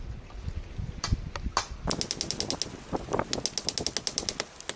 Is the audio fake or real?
real